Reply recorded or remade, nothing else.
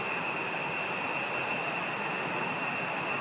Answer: recorded